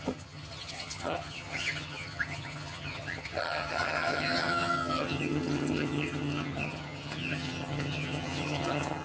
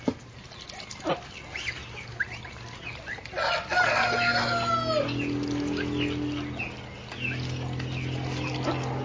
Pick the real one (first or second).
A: second